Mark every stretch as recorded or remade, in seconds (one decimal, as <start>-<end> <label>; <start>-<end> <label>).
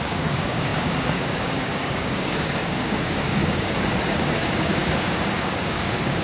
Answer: 0.0-6.2 remade